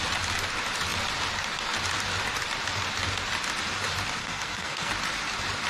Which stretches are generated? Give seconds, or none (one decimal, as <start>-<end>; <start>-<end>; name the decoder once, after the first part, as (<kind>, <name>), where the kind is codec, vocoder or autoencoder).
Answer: 4.2-4.9 (codec, SNAC)

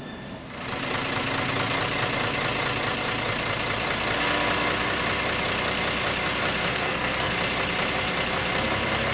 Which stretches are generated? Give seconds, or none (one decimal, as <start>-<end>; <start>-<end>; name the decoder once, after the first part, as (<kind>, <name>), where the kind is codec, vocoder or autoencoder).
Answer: 6.7-7.3 (codec, SNAC)

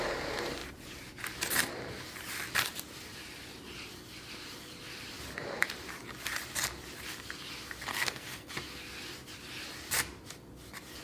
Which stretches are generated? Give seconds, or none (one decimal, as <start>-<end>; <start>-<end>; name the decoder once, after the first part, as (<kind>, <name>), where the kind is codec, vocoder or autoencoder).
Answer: 7.9-8.5 (codec, SNAC)

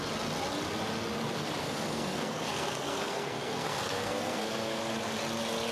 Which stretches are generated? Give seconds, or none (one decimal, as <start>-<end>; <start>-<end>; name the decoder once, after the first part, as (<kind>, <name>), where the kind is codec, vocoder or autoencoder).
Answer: 1.6-4.8 (codec, SNAC)

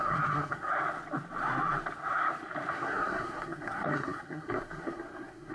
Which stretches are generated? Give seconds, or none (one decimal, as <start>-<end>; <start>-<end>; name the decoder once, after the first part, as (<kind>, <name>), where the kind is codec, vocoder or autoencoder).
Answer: 0.0-0.7 (codec, SNAC); 2.7-5.5

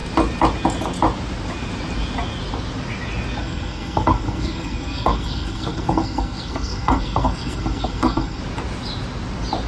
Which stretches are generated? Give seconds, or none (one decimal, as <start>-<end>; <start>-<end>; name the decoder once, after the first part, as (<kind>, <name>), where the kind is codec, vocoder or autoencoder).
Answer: 3.4-8.4 (codec, SNAC)

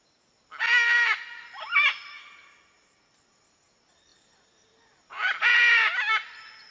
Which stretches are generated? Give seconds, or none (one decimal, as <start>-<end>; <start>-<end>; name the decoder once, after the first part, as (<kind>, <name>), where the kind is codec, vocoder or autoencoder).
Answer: none